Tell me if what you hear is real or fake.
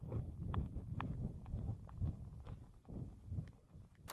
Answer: real